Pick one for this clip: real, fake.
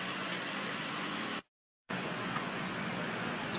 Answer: fake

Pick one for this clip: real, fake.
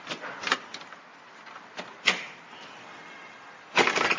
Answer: real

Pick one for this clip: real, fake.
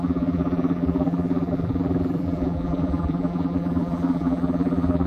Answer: fake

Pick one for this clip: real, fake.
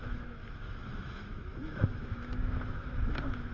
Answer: fake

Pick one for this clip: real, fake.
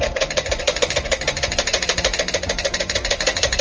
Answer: fake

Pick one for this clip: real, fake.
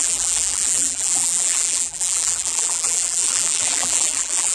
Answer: fake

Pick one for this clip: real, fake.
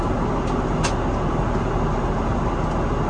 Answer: real